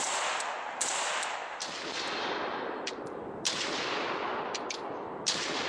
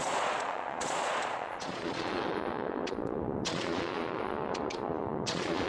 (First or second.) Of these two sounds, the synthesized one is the second